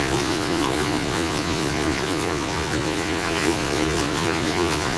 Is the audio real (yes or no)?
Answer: no